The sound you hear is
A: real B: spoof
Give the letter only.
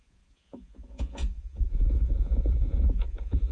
B